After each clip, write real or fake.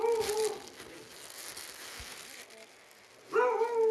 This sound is real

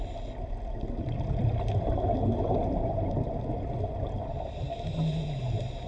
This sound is real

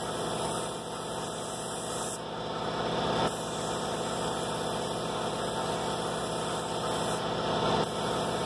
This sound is real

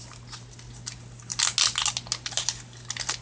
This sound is real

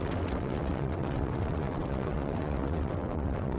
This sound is fake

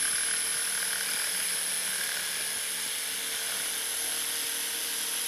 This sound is real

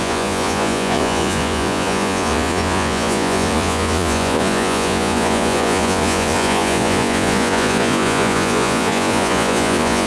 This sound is fake